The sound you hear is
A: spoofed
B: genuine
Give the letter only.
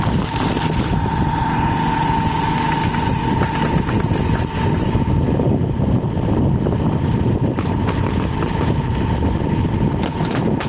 B